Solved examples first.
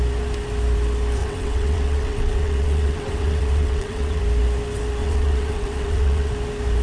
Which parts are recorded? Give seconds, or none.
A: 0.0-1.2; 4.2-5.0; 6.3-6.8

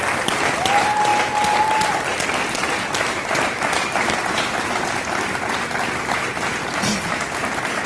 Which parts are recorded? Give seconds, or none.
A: 0.0-7.9

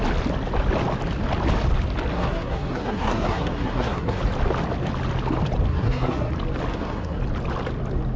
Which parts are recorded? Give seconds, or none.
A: 0.0-2.1; 4.2-5.7; 6.3-6.7; 7.2-8.2

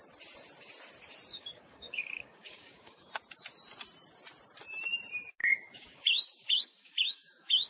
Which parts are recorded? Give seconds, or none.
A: 0.0-1.3; 3.1-5.4